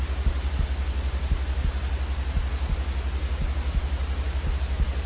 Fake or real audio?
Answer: real